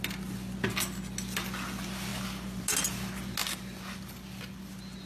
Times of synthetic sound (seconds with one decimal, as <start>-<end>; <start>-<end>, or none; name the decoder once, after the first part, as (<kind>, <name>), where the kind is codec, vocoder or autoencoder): none